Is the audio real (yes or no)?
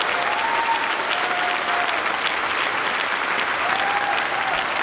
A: yes